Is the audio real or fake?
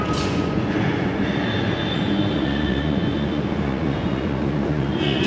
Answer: fake